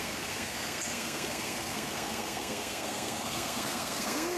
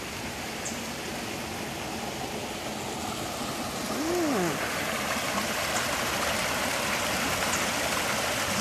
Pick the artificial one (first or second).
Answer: first